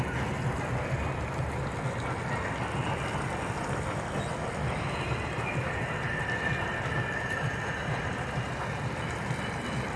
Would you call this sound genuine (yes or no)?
yes